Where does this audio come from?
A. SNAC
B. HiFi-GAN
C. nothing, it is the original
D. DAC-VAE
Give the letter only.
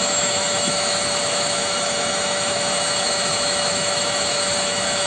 D